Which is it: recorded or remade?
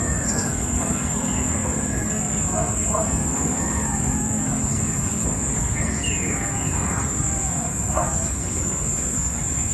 remade